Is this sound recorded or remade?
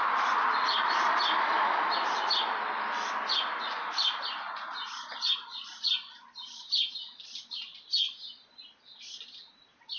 recorded